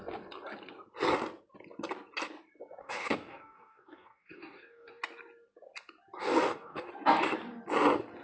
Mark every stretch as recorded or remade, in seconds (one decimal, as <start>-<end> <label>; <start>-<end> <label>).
0.0-2.8 recorded; 2.8-5.0 remade; 5.0-6.2 recorded; 6.2-6.9 remade; 6.9-8.2 recorded